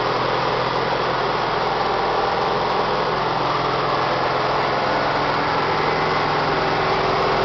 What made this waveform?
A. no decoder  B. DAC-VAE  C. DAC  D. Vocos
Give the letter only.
A